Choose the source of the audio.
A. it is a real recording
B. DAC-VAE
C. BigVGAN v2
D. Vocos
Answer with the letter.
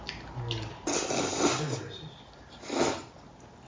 A